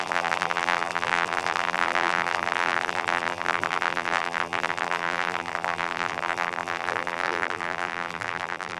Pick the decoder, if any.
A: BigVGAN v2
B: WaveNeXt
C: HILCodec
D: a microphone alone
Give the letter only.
A